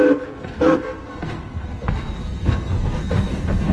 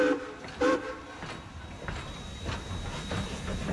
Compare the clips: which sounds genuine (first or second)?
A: second